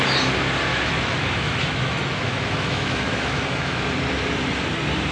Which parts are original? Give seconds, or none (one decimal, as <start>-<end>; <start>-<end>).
0.0-0.7; 3.8-5.1